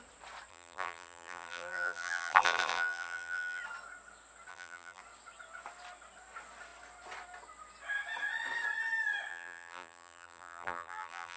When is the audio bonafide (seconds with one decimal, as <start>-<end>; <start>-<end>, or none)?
0.0-0.5; 3.6-4.5; 5.0-9.3